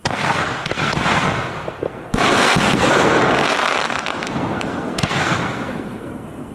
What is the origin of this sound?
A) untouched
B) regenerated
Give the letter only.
B